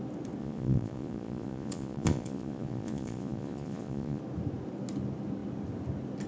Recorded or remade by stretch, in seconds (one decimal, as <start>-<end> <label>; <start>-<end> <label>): 0.0-0.4 recorded; 0.4-4.2 remade; 4.2-6.3 recorded